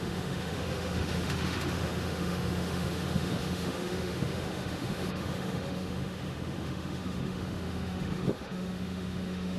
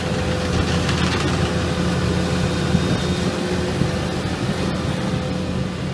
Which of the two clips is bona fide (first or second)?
second